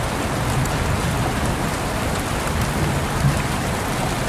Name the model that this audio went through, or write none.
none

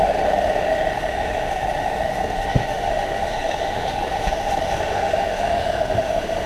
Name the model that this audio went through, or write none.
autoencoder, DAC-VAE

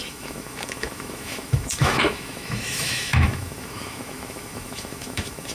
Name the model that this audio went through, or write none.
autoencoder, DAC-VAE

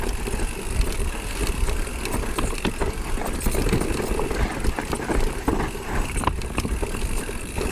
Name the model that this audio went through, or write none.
none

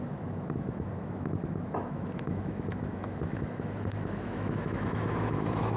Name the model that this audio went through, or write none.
autoencoder, DAC-VAE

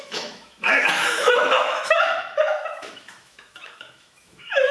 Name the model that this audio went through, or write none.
autoencoder, DAC-VAE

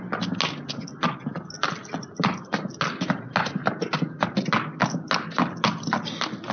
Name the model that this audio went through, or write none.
none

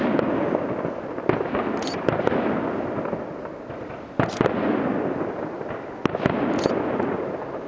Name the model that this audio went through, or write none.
none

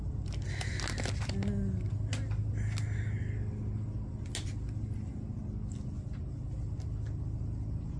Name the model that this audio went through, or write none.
none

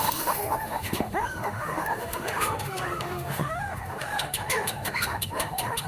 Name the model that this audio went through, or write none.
autoencoder, DAC-VAE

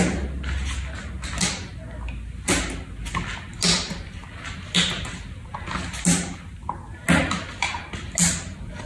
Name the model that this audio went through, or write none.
none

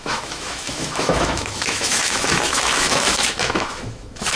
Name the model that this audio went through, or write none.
autoencoder, DAC-VAE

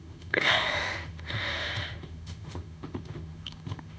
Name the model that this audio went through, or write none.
autoencoder, DAC-VAE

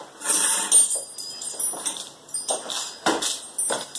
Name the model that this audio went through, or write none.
none